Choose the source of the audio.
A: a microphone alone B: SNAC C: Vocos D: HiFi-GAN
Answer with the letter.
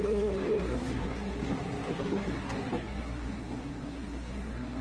B